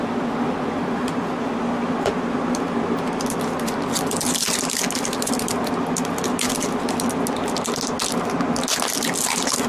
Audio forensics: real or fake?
real